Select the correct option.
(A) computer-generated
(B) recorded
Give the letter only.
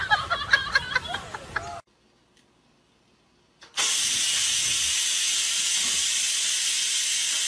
B